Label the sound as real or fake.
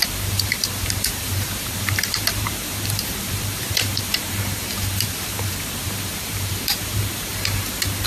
fake